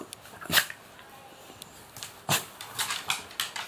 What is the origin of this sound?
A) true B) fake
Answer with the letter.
A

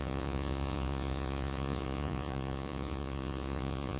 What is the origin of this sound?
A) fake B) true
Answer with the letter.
A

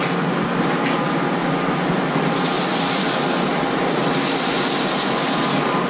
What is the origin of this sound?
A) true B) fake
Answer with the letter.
A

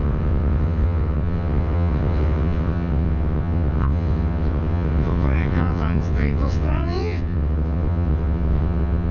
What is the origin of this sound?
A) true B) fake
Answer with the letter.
B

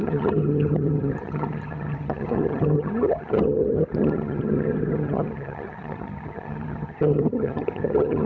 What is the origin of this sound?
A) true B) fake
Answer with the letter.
B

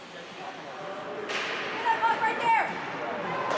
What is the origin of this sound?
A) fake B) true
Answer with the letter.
B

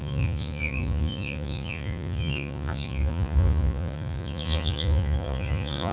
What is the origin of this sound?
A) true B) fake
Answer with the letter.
B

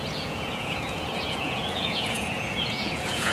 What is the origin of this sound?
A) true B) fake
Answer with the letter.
B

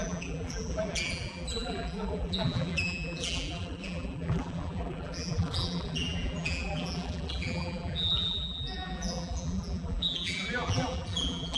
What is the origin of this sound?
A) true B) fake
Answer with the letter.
B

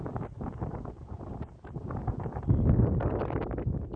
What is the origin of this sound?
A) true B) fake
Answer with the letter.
A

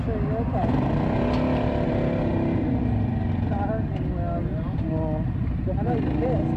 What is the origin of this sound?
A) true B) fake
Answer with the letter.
A